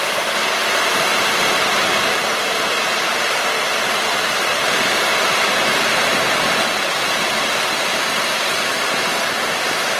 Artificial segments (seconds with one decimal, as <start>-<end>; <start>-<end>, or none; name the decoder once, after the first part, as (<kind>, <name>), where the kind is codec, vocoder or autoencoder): 0.0-10.0 (vocoder, BigVGAN v2)